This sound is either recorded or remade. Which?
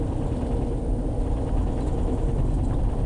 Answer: recorded